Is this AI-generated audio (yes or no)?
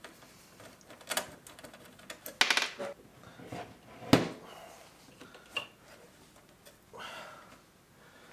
no